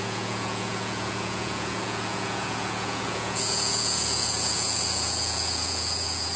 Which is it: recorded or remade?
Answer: remade